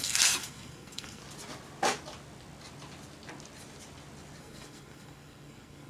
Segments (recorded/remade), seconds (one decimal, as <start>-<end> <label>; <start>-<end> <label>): 0.0-1.2 remade; 1.2-4.4 recorded; 4.4-5.9 remade